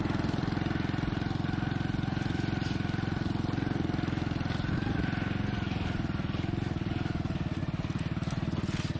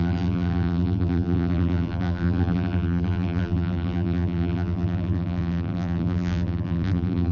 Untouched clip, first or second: first